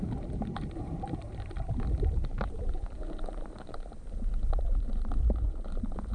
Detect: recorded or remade remade